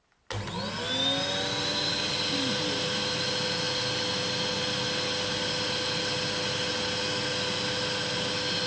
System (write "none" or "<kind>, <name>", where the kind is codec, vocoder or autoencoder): none